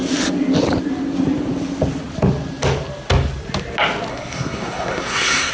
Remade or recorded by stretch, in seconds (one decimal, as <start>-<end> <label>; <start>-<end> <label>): 0.0-4.1 recorded; 4.1-5.5 remade